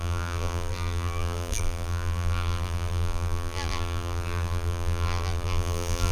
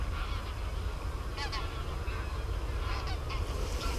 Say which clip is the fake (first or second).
first